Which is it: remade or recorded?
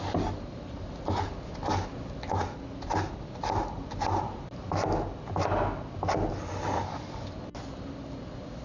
recorded